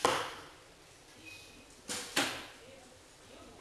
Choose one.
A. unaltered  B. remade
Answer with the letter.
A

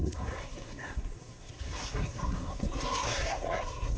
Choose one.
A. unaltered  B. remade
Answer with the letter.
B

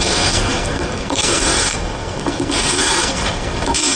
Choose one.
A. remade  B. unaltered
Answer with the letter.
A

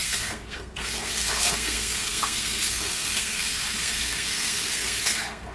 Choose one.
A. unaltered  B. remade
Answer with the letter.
B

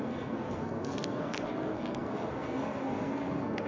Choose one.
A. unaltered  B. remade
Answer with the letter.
B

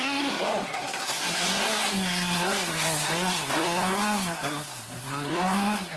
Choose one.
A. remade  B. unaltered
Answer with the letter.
A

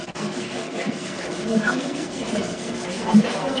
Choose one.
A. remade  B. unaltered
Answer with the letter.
A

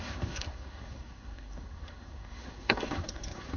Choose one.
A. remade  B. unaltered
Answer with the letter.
A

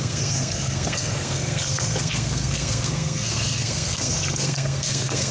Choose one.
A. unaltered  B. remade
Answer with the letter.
B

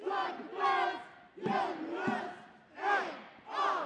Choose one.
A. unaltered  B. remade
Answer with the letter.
A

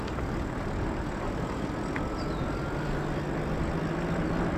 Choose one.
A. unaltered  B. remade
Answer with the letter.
A